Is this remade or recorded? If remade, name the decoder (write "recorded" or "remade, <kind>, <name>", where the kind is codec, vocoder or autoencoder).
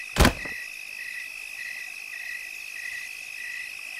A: recorded